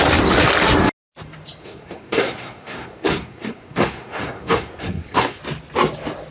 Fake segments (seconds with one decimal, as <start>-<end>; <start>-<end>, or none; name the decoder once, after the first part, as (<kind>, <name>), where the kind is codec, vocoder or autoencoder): 1.6-5.4 (codec, SNAC)